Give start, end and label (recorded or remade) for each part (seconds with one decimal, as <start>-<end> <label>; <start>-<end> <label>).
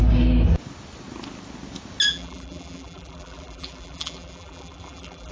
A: 0.0-2.1 recorded; 2.1-5.3 remade